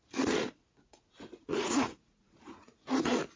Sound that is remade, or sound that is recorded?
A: remade